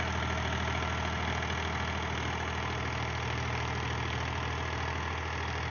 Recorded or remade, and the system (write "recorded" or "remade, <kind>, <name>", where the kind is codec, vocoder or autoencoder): recorded